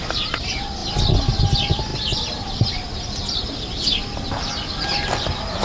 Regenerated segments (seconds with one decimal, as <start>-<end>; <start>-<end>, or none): none